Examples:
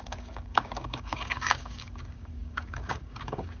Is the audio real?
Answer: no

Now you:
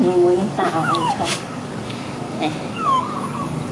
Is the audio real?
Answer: no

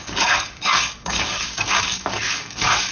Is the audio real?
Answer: no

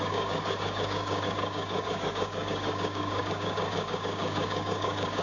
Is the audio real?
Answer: no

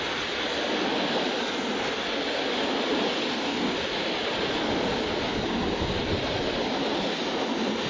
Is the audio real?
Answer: yes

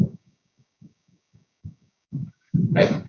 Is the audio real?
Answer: no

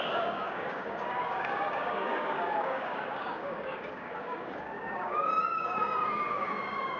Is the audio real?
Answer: no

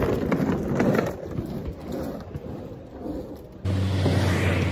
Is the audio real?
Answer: yes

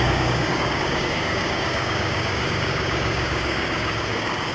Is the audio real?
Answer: no